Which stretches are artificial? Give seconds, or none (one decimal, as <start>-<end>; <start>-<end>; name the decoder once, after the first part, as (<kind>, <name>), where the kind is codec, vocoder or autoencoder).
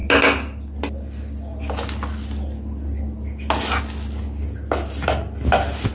none